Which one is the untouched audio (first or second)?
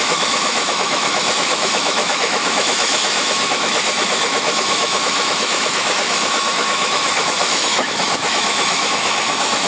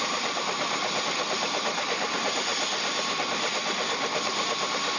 second